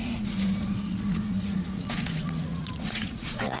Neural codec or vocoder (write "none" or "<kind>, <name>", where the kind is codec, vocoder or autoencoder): vocoder, Vocos